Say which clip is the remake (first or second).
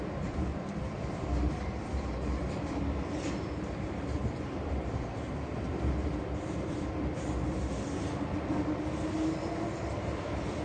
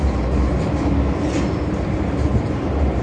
first